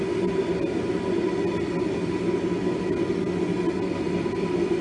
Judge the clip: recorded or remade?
recorded